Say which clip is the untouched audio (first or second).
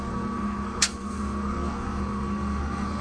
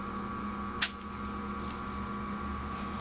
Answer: second